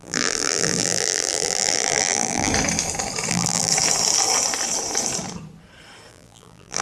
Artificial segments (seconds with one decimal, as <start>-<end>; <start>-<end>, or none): 0.0-2.5; 3.3-3.7; 6.1-6.8